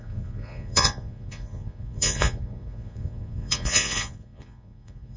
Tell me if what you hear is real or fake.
fake